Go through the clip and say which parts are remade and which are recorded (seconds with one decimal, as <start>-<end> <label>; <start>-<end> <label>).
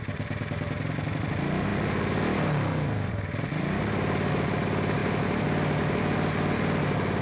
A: 0.0-7.2 recorded